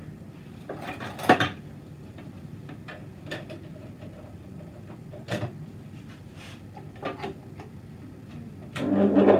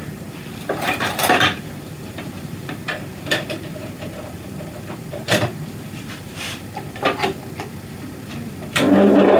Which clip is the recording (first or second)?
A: first